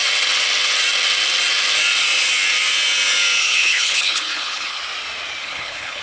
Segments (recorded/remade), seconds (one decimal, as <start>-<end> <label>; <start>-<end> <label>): 0.0-3.4 recorded; 3.4-4.8 remade; 4.8-5.4 recorded; 5.4-6.0 remade